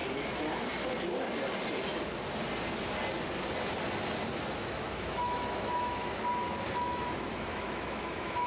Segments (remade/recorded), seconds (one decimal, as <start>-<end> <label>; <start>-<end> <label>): 0.0-4.3 recorded; 4.3-6.0 remade; 6.0-6.7 recorded; 6.7-8.5 remade